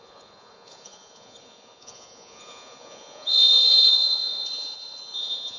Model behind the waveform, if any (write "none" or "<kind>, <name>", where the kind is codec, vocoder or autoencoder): vocoder, Vocos